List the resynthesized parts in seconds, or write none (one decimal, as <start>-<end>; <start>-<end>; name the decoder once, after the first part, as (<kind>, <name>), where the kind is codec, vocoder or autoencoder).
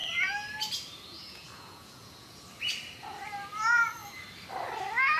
1.1-2.4 (vocoder, Vocos)